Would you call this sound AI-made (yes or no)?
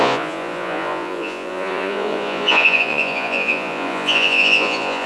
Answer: yes